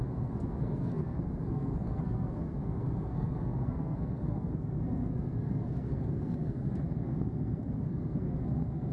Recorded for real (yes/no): no